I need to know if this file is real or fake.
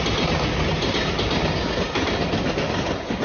real